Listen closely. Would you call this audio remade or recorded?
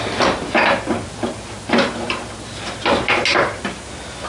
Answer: recorded